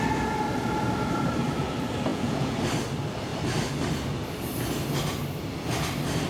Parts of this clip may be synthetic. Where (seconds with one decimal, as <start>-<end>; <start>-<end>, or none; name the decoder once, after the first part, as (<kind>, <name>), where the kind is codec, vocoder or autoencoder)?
2.1-2.6 (vocoder, Vocos)